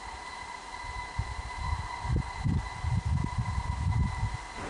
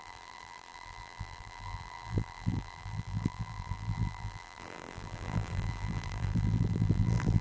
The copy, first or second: second